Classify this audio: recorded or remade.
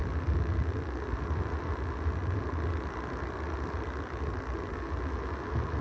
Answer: recorded